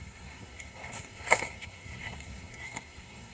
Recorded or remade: remade